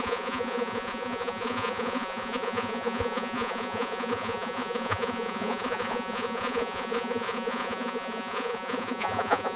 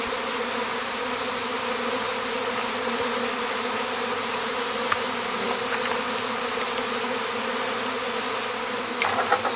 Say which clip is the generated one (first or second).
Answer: first